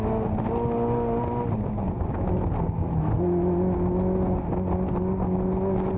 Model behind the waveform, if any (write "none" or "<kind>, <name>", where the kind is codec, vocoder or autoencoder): none